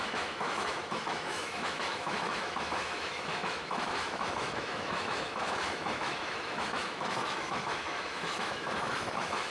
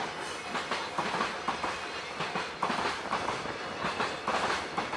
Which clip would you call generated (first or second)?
first